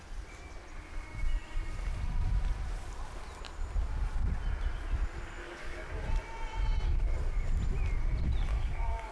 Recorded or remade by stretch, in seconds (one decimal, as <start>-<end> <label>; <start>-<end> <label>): 0.0-5.4 recorded; 5.4-6.0 remade; 6.0-8.5 recorded; 8.5-9.1 remade